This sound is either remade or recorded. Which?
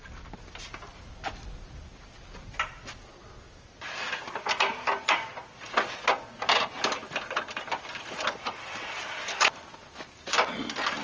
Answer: recorded